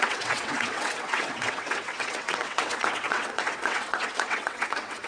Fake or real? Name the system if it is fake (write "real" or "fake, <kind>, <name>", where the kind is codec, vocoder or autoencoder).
fake, vocoder, WaveNeXt